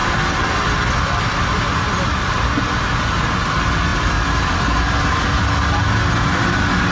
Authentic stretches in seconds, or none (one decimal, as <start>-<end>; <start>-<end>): 3.0-6.9

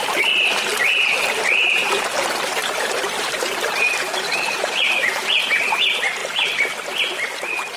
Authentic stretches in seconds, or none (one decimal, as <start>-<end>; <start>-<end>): 0.0-0.7; 2.0-2.6; 5.6-6.2; 6.7-7.8

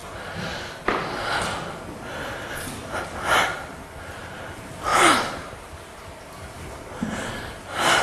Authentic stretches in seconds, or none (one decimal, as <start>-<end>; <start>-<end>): 0.0-4.9; 7.4-8.0

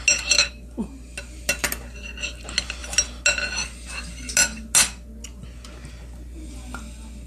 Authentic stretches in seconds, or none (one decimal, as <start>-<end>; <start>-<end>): 0.0-7.3

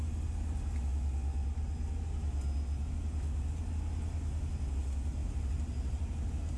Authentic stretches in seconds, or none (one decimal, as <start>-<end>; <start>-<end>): 0.0-5.2; 6.1-6.6